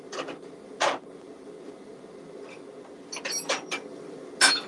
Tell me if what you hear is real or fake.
real